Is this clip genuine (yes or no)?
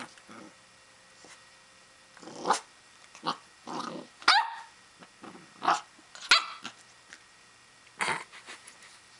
yes